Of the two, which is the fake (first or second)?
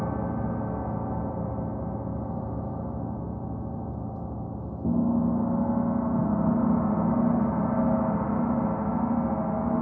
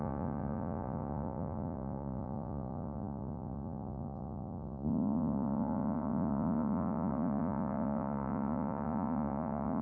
second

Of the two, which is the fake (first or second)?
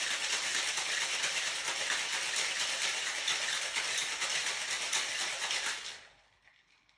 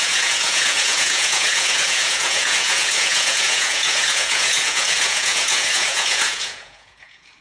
second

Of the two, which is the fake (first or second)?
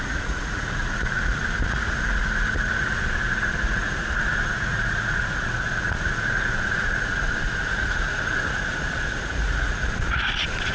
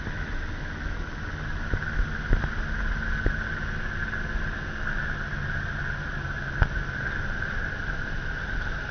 first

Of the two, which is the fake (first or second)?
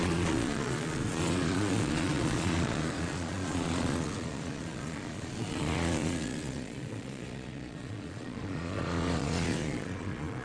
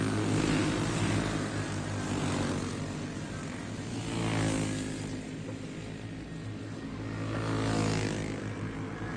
first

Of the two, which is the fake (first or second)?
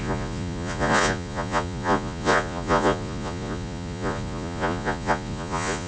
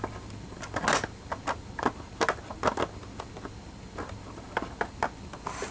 first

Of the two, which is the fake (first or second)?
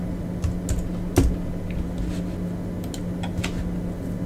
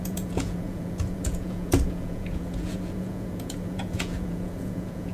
second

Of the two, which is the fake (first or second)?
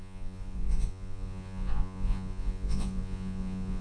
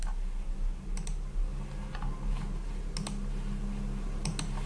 first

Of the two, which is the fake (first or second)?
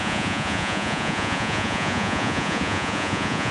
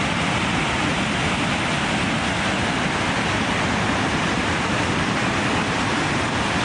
first